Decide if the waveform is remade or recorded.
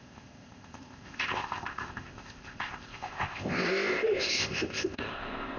remade